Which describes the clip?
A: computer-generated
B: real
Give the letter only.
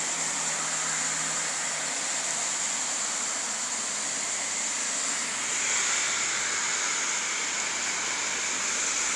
B